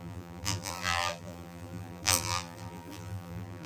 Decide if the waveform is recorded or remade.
remade